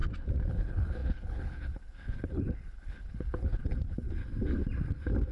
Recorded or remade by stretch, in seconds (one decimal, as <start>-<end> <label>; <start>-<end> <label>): 0.0-0.5 recorded; 0.5-4.2 remade; 4.2-5.3 recorded

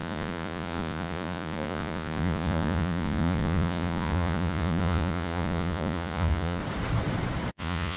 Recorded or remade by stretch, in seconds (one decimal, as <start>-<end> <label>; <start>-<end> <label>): 0.0-6.6 remade; 6.6-7.5 recorded; 7.5-8.0 remade

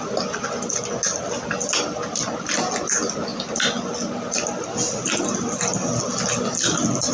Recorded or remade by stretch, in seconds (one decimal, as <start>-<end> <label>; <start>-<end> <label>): 0.0-7.1 recorded